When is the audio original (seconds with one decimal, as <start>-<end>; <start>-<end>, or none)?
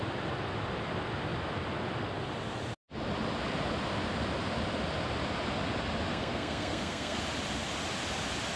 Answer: 0.0-6.1; 7.2-8.6